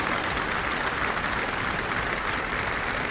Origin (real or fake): real